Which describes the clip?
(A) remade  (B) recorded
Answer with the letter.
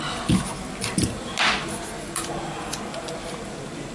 B